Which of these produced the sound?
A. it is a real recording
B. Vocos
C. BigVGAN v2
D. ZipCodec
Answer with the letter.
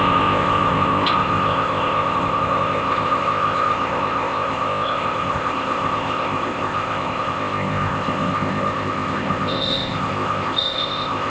D